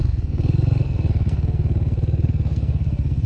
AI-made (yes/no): yes